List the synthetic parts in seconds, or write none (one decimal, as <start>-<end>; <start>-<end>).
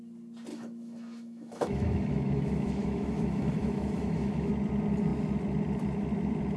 0.5-4.5